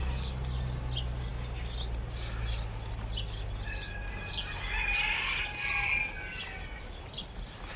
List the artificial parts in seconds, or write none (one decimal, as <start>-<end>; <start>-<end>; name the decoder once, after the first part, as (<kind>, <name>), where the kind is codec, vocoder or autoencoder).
none